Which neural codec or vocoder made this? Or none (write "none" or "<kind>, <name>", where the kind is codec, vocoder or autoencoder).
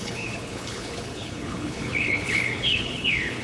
codec, HILCodec